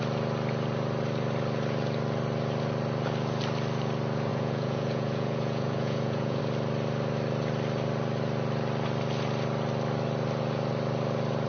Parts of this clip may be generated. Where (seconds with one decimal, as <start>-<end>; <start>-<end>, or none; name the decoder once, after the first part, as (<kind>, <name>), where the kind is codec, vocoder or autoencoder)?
4.3-6.4 (vocoder, Vocos)